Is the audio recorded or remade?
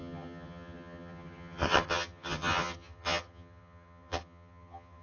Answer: remade